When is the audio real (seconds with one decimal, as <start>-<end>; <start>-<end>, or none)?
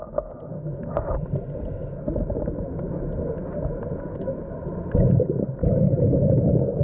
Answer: 0.0-5.6